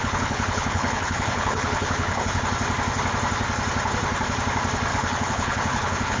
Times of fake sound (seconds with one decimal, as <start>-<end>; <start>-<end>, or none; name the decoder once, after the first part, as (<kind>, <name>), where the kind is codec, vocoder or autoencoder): 0.0-2.4 (codec, HILCodec); 4.9-6.2